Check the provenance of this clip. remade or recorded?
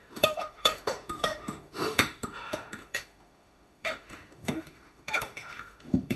remade